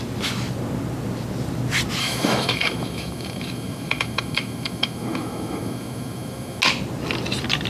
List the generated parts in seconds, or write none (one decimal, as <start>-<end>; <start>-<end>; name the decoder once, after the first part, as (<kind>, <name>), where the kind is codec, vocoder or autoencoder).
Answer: 2.0-6.6 (autoencoder, DAC-VAE)